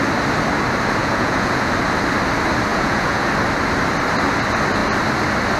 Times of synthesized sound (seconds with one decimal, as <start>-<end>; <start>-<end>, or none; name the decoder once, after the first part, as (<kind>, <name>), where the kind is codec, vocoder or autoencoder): 1.0-1.7 (vocoder, Vocos); 2.7-3.3